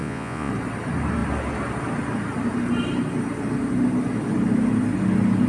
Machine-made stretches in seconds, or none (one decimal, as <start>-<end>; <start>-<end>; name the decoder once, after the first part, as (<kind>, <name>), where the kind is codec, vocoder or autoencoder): 0.0-0.5 (vocoder, Vocos)